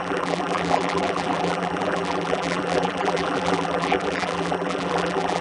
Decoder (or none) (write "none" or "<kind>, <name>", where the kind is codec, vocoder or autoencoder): vocoder, BigVGAN v2